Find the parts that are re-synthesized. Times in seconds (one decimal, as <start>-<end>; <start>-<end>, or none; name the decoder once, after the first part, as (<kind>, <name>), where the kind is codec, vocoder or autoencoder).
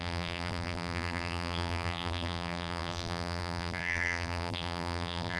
0.0-5.4 (vocoder, BigVGAN v2)